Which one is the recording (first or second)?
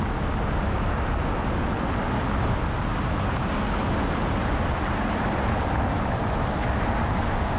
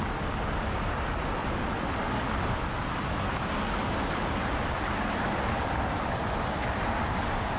first